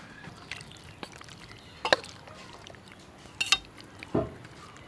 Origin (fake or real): real